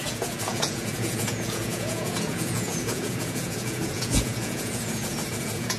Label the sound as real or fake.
fake